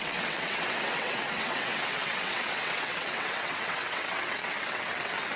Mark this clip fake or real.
fake